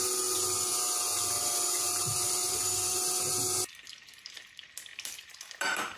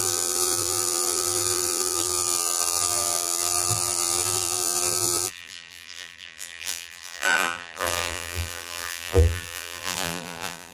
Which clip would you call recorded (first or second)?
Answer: first